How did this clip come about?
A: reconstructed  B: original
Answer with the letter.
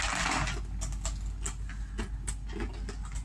B